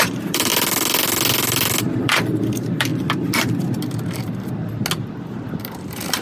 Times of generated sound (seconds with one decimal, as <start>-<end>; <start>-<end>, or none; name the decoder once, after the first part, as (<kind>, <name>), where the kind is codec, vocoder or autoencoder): 0.0-0.5 (vocoder, BigVGAN v2); 1.8-2.9; 5.6-6.2